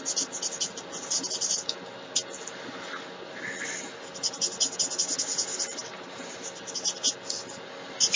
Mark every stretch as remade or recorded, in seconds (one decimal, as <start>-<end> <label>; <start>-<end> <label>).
0.0-8.2 recorded